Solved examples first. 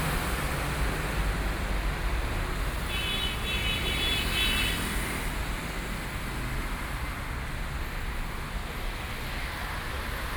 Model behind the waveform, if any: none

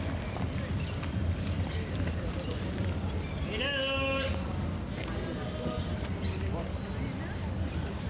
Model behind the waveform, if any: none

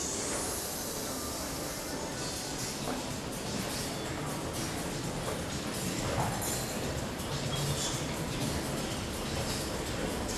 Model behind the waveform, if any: none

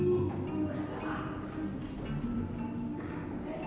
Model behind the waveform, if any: none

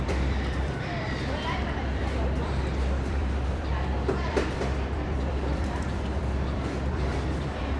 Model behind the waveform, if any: vocoder, BigVGAN v2